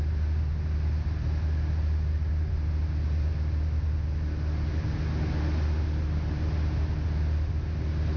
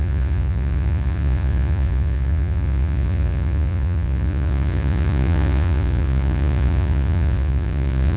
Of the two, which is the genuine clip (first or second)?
first